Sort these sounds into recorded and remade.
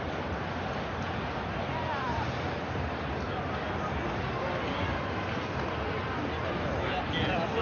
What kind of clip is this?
recorded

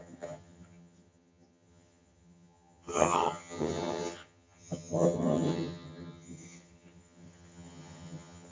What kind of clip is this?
remade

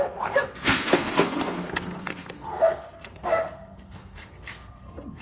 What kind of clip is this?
remade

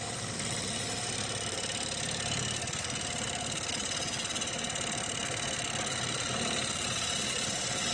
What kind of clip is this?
remade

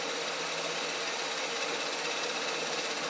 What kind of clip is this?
recorded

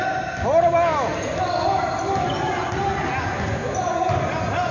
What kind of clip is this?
recorded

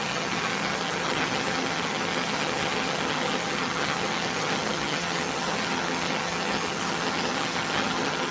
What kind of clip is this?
remade